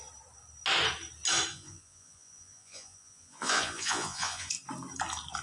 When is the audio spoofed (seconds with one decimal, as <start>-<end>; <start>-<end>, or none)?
1.5-4.5